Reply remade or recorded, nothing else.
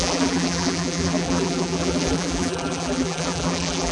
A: remade